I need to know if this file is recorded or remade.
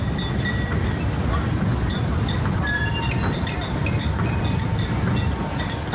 recorded